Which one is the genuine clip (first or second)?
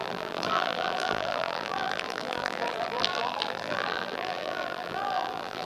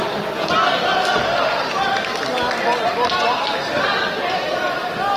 second